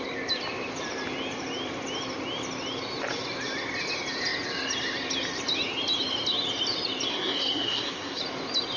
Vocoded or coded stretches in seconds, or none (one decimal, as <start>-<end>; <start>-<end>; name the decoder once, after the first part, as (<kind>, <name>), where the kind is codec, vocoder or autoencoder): 7.1-8.2 (codec, SNAC)